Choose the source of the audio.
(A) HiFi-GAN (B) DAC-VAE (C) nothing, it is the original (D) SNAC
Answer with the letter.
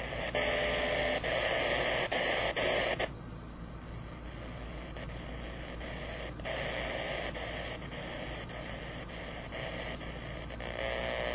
C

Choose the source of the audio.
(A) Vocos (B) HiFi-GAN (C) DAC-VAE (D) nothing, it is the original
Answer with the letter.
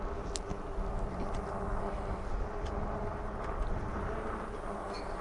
D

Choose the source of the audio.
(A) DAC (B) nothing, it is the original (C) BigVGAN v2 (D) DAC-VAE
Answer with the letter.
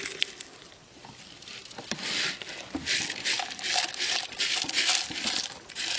B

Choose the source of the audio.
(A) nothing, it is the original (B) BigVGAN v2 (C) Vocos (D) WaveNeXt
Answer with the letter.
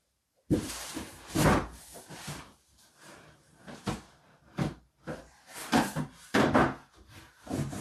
B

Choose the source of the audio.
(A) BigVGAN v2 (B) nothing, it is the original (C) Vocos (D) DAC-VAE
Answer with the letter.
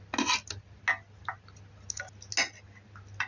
B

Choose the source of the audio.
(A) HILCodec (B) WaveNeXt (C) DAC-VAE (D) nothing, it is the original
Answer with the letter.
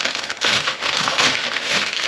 C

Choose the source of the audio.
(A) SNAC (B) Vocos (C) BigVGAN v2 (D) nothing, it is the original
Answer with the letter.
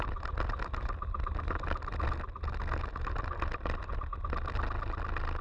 D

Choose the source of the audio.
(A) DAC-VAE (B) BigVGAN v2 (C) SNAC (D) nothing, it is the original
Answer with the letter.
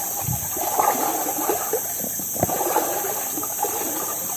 D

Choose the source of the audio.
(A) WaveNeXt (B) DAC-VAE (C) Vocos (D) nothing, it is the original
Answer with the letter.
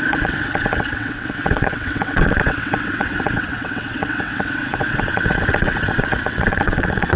A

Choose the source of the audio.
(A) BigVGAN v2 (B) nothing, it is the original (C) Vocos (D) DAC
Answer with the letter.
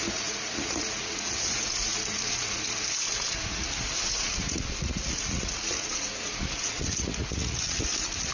C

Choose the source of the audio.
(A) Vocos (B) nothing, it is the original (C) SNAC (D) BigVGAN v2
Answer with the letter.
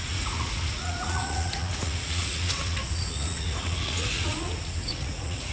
A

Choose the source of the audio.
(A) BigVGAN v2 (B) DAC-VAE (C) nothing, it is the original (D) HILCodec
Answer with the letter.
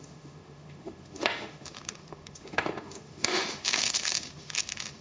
B